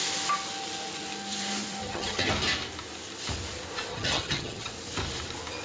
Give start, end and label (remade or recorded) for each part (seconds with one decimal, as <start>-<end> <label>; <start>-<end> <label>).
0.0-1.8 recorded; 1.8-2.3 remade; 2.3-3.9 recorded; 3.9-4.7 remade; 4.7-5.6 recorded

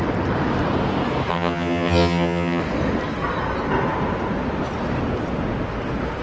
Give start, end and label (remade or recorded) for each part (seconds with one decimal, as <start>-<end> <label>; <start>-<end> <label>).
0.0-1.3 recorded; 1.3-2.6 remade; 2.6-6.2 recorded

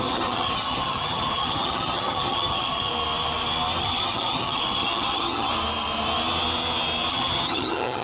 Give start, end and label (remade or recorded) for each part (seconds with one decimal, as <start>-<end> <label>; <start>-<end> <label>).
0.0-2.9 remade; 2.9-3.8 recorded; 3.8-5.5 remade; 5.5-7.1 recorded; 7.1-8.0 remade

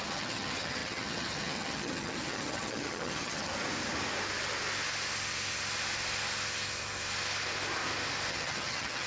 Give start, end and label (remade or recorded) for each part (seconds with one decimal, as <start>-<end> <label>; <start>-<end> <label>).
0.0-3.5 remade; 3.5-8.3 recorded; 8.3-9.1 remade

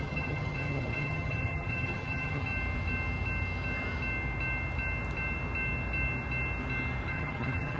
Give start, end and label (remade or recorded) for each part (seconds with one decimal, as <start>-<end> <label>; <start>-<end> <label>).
0.0-2.5 remade; 2.5-7.1 recorded; 7.1-7.8 remade

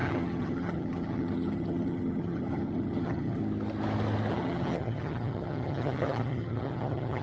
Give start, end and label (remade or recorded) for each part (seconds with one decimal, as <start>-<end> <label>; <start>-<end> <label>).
0.0-3.4 remade; 3.4-4.3 recorded; 4.3-7.2 remade

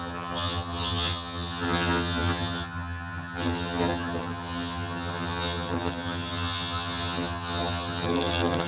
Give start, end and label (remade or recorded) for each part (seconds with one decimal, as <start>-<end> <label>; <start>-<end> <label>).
0.0-8.7 remade